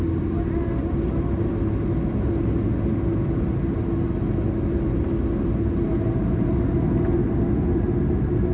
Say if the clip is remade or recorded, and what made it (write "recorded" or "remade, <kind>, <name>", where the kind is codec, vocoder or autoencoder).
recorded